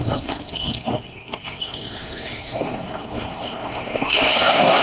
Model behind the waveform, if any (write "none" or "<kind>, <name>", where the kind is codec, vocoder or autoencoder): codec, SNAC